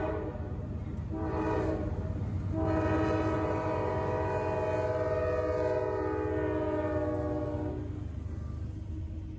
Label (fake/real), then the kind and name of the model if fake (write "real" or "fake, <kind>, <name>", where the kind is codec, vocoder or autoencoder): real